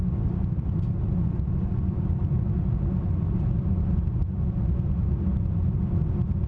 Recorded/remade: recorded